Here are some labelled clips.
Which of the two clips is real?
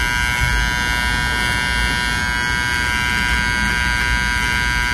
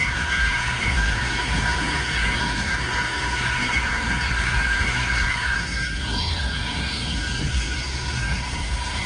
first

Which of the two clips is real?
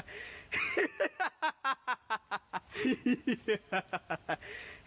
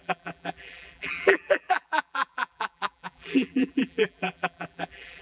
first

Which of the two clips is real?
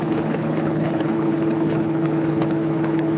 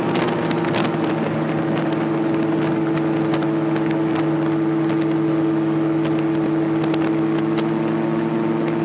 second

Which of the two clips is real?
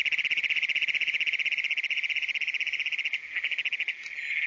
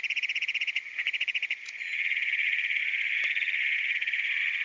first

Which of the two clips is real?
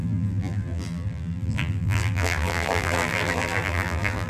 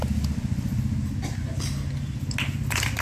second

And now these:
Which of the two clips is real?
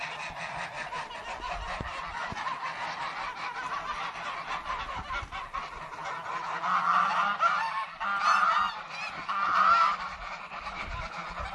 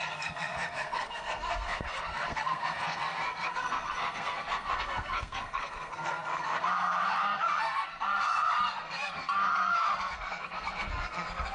first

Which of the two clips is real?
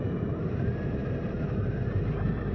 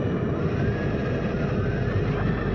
second